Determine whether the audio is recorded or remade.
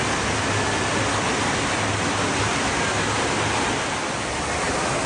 recorded